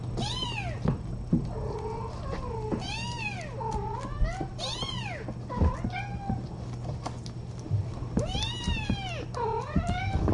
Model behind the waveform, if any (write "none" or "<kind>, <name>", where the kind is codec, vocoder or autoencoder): none